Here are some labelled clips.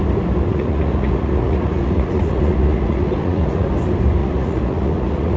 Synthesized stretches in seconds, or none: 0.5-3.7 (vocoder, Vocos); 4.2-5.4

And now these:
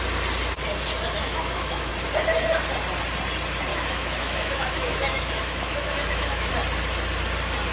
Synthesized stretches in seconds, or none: 1.2-1.9 (autoencoder, DAC-VAE); 3.7-6.5

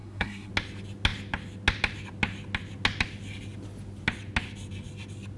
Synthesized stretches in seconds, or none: 0.0-0.5 (codec, SNAC)